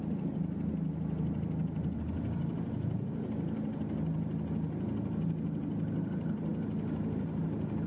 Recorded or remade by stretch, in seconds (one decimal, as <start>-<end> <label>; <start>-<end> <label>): 0.0-7.9 recorded